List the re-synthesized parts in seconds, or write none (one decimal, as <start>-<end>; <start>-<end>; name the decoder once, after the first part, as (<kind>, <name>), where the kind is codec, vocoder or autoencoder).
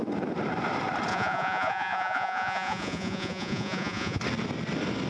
1.1-4.2 (vocoder, Vocos)